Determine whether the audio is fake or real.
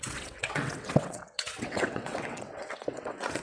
fake